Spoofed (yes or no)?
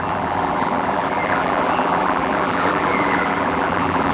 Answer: yes